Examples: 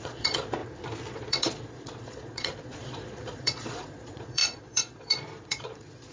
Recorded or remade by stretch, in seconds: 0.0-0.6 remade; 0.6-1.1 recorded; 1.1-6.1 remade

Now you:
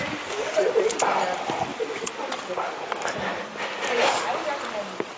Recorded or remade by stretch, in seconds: 0.0-5.2 recorded

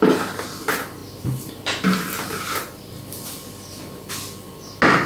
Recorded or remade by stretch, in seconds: 0.0-1.0 recorded; 1.0-4.1 remade; 4.1-5.1 recorded

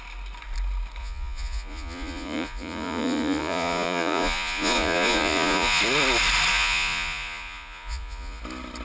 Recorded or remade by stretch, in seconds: 0.0-1.0 recorded; 1.0-5.8 remade; 5.8-6.5 recorded; 6.5-8.4 remade; 8.4-8.8 recorded

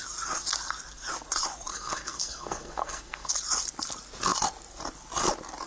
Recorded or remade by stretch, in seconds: 0.0-1.7 recorded; 1.7-3.3 remade; 3.3-5.7 recorded

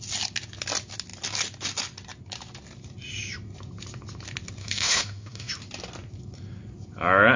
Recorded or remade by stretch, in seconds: 0.0-4.6 recorded; 4.6-5.5 remade; 5.5-7.4 recorded

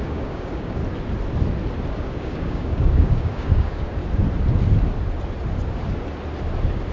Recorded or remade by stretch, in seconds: 0.0-0.8 remade; 0.8-1.9 recorded; 1.9-4.0 remade; 4.0-6.9 recorded